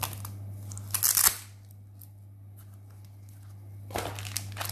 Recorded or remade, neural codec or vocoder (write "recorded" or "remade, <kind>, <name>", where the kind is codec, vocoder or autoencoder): recorded